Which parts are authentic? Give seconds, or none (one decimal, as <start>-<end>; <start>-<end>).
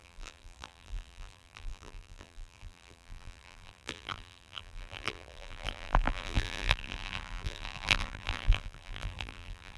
none